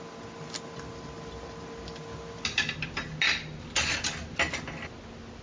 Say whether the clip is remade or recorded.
recorded